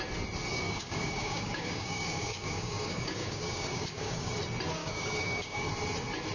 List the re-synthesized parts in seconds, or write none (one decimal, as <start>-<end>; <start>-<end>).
0.5-4.3; 4.8-5.7